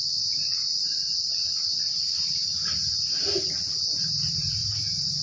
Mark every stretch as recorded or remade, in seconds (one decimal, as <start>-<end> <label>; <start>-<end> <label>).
0.0-5.2 recorded